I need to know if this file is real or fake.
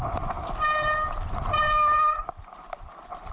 real